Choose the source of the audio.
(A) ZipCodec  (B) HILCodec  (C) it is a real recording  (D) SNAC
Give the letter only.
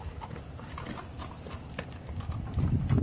C